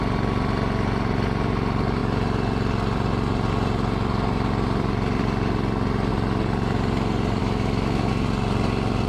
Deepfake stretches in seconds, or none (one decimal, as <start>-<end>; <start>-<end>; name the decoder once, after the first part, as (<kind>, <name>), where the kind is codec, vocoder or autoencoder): 7.4-8.1 (autoencoder, DAC-VAE)